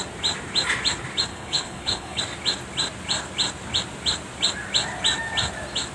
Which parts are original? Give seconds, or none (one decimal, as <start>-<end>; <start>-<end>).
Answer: 0.0-1.3; 2.2-5.9